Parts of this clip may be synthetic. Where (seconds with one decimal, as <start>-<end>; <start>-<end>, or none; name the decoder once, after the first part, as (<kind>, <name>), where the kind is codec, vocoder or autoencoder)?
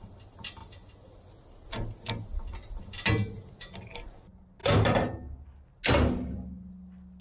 none